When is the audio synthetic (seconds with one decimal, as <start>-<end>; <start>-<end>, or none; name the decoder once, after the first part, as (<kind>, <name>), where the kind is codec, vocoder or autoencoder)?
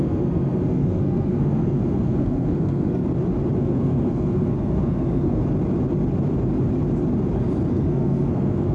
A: 0.0-3.0 (codec, SNAC); 3.6-5.4; 7.7-8.7